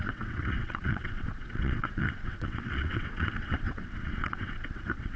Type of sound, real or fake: fake